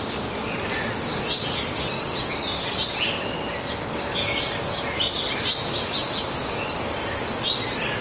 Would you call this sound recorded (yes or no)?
yes